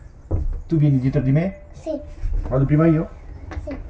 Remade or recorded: recorded